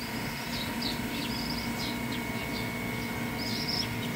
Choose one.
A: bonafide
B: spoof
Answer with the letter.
A